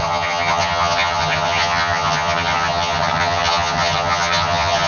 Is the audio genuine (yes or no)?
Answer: no